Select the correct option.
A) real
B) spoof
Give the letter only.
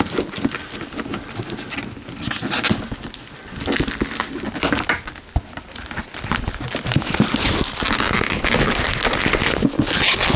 A